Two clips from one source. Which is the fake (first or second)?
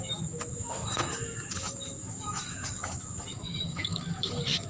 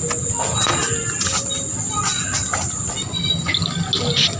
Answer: first